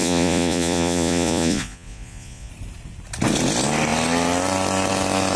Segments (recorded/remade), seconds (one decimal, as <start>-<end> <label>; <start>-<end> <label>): 0.0-2.5 remade; 2.5-5.4 recorded